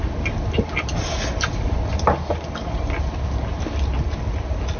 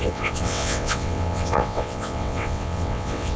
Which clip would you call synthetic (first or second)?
second